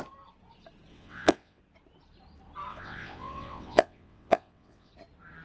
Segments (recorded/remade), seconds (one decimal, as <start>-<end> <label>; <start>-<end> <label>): 0.0-0.9 recorded; 0.9-1.6 remade; 1.6-2.7 recorded; 2.7-4.9 remade; 4.9-5.4 recorded

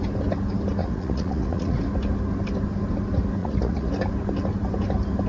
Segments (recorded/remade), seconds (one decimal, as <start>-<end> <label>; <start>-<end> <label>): 0.0-0.8 recorded; 0.8-1.8 remade; 1.8-3.4 recorded; 3.4-3.9 remade; 3.9-5.3 recorded